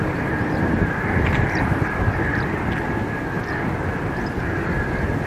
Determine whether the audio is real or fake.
real